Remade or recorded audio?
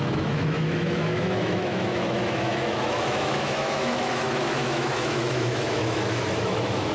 remade